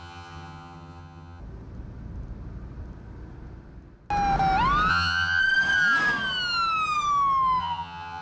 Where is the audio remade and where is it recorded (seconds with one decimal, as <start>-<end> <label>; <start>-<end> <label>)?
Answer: 0.0-1.4 remade; 1.4-4.9 recorded; 4.9-5.4 remade; 5.4-7.6 recorded; 7.6-8.2 remade